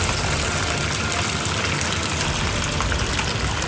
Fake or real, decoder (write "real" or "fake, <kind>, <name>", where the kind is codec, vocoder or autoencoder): real